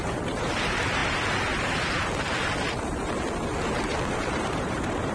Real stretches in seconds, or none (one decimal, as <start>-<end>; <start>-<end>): 1.0-4.1